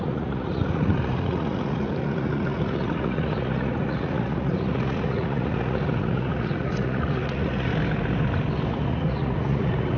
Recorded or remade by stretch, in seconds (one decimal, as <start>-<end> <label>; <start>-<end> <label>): 0.0-7.7 remade; 7.7-8.7 recorded; 8.7-10.0 remade